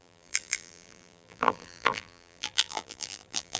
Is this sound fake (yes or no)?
yes